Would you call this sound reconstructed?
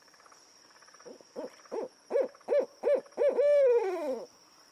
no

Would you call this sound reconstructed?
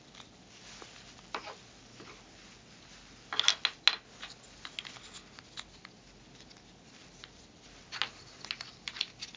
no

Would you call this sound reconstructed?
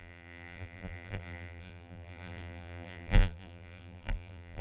yes